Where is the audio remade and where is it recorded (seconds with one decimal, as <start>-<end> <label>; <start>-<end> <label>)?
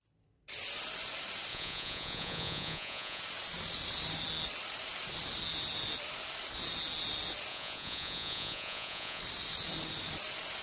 0.0-1.5 recorded; 1.5-3.2 remade; 3.2-7.5 recorded; 7.5-9.2 remade; 9.2-10.6 recorded